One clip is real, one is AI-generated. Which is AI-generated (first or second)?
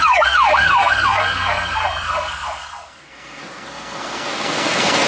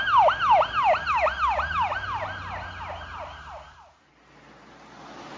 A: first